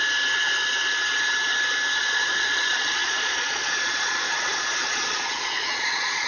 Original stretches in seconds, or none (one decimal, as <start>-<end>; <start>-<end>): 0.0-2.0